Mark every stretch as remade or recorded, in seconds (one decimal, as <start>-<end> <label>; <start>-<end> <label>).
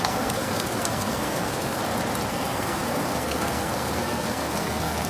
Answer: 0.0-1.8 remade; 1.8-2.3 recorded; 2.3-5.1 remade